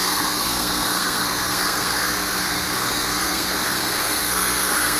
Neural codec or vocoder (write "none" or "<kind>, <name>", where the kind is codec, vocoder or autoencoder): codec, SNAC